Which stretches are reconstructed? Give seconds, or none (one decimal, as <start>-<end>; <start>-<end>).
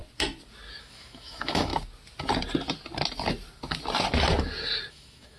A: 0.8-1.7; 4.9-5.4